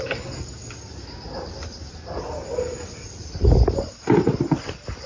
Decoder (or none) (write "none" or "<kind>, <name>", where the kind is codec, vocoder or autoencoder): none